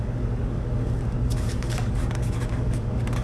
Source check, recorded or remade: remade